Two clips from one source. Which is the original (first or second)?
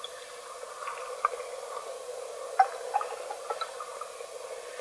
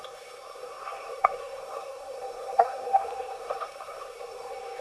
first